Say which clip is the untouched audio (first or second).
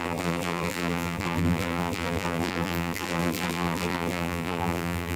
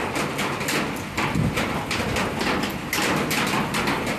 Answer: second